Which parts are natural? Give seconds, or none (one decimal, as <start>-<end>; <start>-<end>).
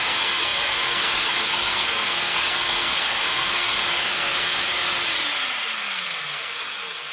4.6-5.9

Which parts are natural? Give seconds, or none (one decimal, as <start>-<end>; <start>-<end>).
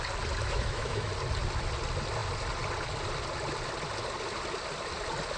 0.0-0.4; 1.1-5.4